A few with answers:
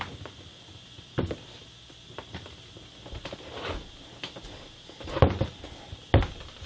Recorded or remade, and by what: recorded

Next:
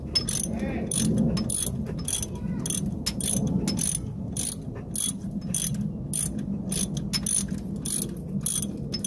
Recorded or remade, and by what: recorded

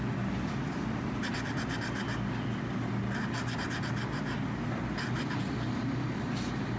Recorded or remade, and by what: recorded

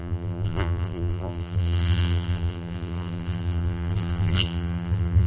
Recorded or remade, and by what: remade, vocoder, BigVGAN v2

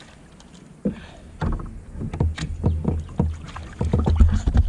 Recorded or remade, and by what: recorded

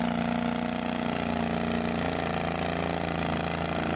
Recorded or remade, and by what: recorded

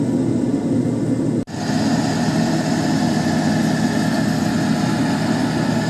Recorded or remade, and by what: recorded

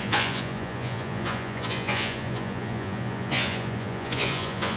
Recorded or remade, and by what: remade, vocoder, Vocos